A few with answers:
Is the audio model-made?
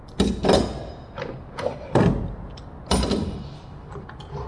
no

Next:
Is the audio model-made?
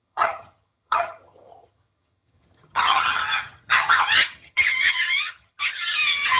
yes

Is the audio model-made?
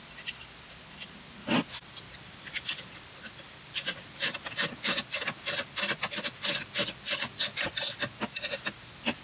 no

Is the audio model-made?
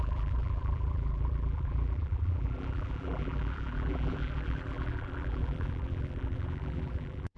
yes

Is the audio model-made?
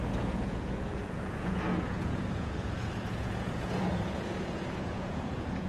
yes